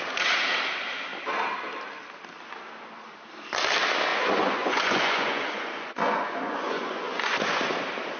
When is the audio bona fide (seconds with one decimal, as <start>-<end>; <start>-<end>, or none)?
0.0-4.1; 7.6-8.2